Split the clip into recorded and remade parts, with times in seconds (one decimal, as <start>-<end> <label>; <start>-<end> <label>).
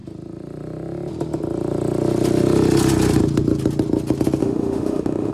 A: 0.0-4.4 recorded; 4.4-5.3 remade